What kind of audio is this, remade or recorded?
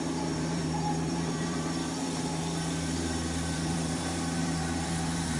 remade